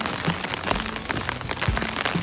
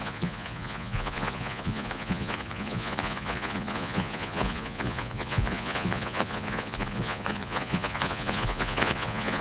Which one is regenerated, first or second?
second